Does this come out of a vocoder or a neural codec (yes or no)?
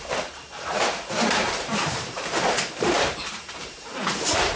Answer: yes